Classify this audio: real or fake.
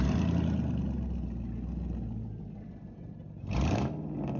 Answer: real